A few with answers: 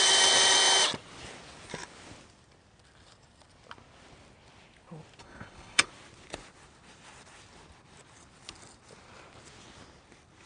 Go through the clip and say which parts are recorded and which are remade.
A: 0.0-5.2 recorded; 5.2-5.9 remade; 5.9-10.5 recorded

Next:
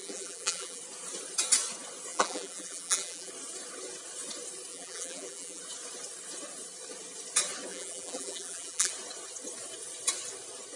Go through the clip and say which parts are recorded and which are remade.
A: 0.0-0.8 remade; 0.8-2.1 recorded; 2.1-3.3 remade; 3.3-4.7 recorded; 4.7-5.6 remade; 5.6-7.7 recorded; 7.7-8.9 remade; 8.9-10.8 recorded